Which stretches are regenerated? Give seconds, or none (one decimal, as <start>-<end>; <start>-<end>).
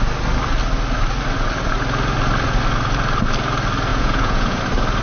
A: 3.9-4.6